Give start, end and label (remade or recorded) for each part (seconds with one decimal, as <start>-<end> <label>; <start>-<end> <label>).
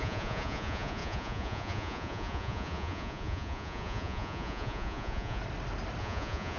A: 0.0-5.4 remade; 5.4-6.0 recorded; 6.0-6.6 remade